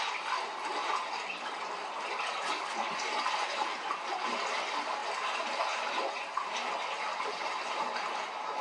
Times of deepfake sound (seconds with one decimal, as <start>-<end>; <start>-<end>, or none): 0.0-0.7; 4.5-5.0; 7.8-8.6